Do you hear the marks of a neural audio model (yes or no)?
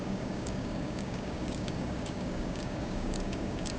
yes